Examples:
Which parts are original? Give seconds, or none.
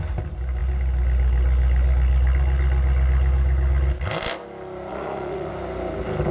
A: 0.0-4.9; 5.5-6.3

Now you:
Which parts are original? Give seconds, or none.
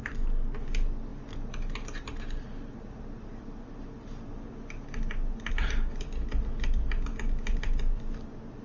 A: 0.0-8.6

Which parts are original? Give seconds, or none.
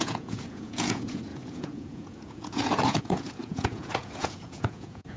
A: none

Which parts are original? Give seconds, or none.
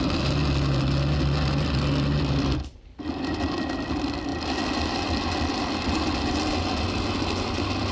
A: 0.0-7.9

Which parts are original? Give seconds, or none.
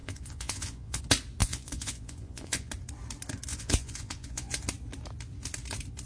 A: 1.0-1.4; 2.7-3.5; 4.6-6.1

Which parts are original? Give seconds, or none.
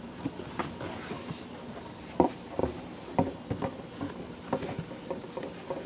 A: 0.0-5.9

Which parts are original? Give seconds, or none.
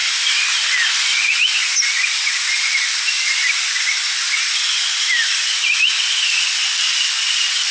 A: 0.0-7.7